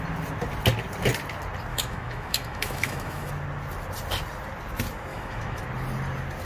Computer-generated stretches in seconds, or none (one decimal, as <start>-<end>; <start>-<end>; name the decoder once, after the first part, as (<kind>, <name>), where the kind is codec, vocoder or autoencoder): 1.7-3.3 (autoencoder, DAC-VAE); 5.1-5.6